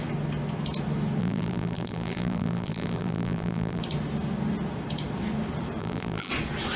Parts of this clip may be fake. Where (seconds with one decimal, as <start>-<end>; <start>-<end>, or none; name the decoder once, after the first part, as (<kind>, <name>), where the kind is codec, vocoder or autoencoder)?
1.2-3.8 (vocoder, BigVGAN v2); 5.8-6.3